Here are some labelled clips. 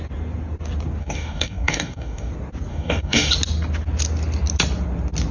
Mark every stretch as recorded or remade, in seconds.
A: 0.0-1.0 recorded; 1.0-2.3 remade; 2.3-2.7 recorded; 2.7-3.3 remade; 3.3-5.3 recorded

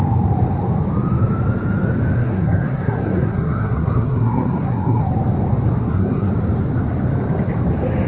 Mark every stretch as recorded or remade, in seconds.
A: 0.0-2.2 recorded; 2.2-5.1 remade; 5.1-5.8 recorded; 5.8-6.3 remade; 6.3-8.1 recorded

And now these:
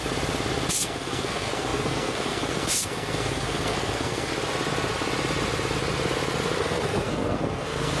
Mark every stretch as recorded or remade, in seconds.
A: 0.0-0.7 recorded; 0.7-4.3 remade; 4.3-6.6 recorded; 6.6-8.0 remade